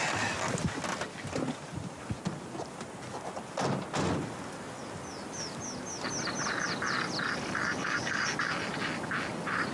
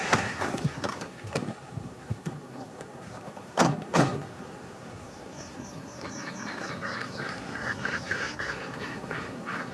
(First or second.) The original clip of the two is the first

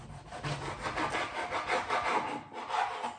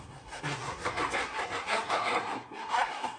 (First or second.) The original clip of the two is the first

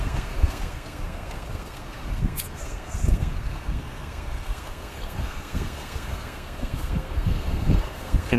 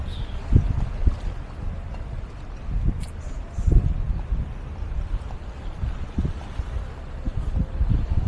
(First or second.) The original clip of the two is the second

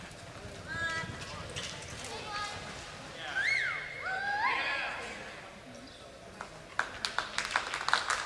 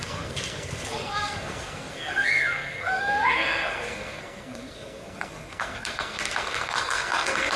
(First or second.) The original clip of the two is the first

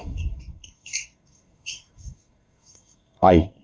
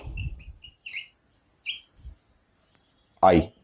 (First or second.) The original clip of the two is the second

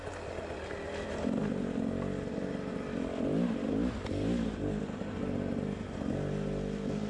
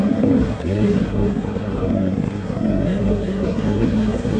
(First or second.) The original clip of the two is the first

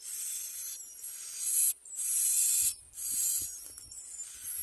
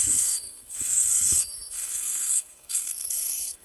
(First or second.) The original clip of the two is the first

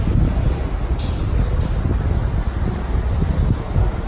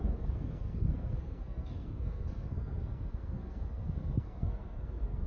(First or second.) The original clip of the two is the first